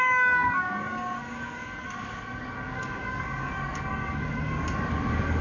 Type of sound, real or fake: fake